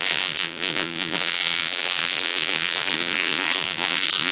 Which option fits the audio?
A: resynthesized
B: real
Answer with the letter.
A